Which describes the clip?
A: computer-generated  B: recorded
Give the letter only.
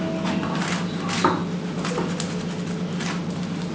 B